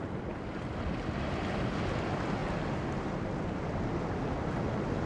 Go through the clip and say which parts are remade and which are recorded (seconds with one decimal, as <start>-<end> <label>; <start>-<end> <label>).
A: 0.0-5.1 recorded